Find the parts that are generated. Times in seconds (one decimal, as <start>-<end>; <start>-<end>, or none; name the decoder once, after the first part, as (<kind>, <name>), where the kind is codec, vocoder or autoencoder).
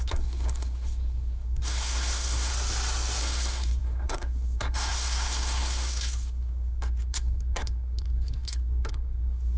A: 0.0-2.5 (codec, SNAC); 3.2-9.6